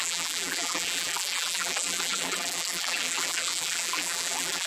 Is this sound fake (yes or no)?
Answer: yes